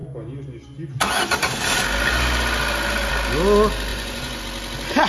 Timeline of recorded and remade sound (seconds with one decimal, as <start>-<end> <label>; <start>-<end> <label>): 0.0-3.9 recorded; 3.9-4.4 remade; 4.4-5.1 recorded